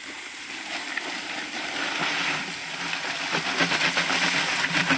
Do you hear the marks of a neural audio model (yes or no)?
no